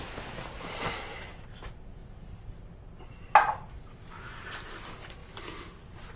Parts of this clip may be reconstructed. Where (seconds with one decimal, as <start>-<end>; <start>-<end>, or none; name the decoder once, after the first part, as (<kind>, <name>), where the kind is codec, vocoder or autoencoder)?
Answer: none